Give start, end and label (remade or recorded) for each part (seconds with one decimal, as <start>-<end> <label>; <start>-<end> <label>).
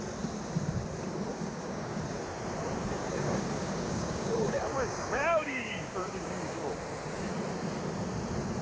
0.0-1.3 recorded; 1.3-2.0 remade; 2.0-2.8 recorded; 2.8-6.7 remade; 6.7-8.6 recorded